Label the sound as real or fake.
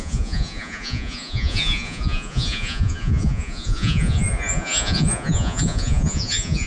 fake